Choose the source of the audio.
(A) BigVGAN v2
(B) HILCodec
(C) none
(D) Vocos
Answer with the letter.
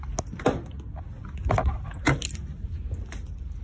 C